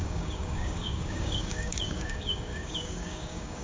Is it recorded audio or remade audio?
remade